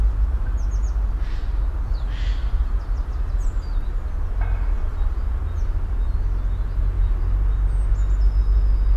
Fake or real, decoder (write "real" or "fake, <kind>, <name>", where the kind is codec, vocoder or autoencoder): real